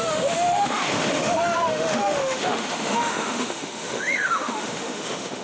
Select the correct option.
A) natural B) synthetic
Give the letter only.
B